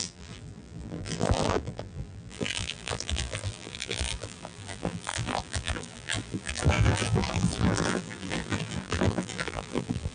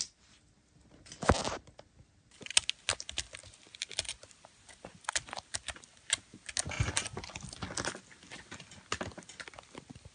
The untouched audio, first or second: second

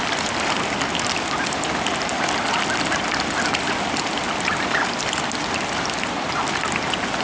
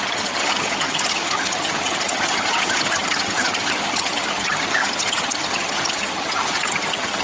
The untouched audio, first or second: first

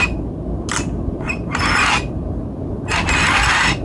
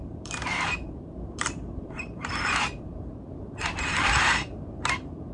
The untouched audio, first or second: first